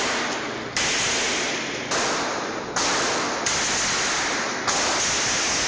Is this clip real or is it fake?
real